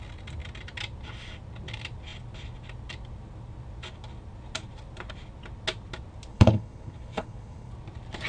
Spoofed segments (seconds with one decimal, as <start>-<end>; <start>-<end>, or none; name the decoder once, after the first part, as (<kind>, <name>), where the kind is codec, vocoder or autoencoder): 6.3-7.7 (codec, HILCodec)